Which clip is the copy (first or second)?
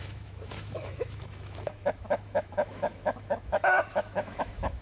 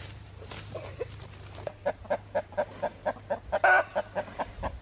first